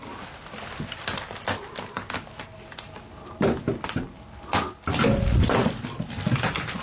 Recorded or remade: recorded